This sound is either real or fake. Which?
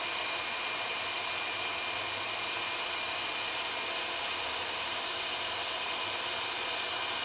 real